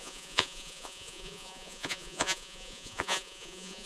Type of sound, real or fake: fake